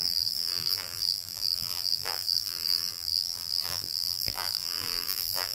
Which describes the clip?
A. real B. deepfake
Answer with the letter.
B